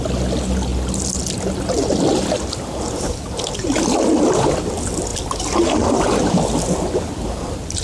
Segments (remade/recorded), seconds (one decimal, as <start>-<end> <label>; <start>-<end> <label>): 0.0-7.8 recorded